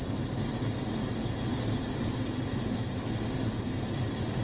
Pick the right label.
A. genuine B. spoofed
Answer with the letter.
A